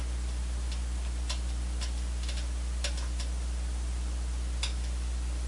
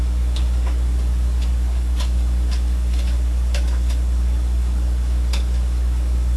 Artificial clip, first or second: second